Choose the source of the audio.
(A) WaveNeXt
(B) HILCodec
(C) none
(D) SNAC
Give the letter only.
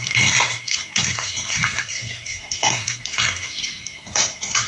D